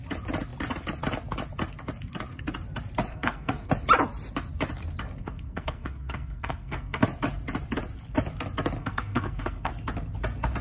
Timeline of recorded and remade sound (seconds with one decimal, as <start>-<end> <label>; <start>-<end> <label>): 0.0-3.1 recorded; 3.1-3.7 remade; 3.7-5.2 recorded; 5.2-7.0 remade; 7.0-8.8 recorded; 8.8-9.7 remade; 9.7-10.6 recorded